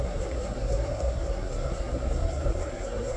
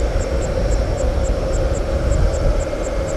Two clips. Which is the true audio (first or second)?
second